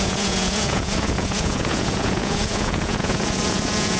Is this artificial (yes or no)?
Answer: yes